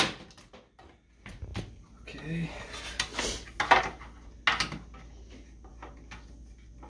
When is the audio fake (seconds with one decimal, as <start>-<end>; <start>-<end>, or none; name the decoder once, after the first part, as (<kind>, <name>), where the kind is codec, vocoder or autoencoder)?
none